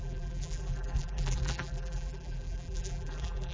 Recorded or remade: remade